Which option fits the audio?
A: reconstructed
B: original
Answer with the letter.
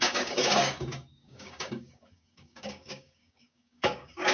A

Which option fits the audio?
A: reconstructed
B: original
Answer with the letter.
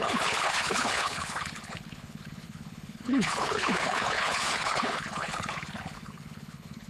A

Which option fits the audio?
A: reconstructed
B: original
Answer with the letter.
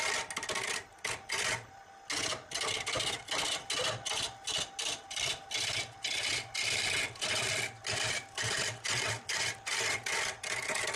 B